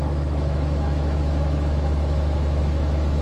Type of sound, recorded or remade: remade